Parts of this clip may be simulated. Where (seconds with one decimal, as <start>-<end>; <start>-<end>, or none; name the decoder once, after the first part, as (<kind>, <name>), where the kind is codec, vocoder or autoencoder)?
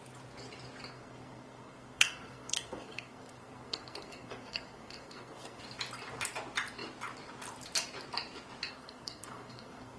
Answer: 0.9-5.6 (codec, SNAC); 8.7-10.0